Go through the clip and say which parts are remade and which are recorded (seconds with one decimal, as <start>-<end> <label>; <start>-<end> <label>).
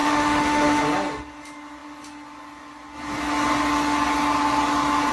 0.0-0.8 remade; 0.8-5.1 recorded